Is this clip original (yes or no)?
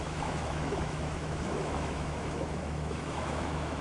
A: no